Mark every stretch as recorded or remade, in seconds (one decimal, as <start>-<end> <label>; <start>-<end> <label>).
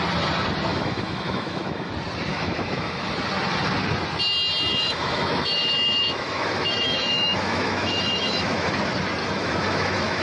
0.0-0.7 recorded; 0.7-1.9 remade; 1.9-2.3 recorded; 2.3-3.0 remade; 3.0-4.7 recorded; 4.7-8.7 remade; 8.7-9.2 recorded; 9.2-10.2 remade